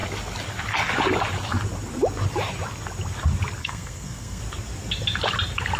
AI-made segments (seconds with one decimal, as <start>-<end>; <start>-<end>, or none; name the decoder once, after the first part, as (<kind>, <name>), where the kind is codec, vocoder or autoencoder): 3.6-4.4 (codec, SNAC)